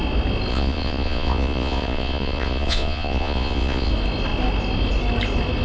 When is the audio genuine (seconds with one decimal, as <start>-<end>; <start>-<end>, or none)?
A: 0.0-0.5; 3.9-5.6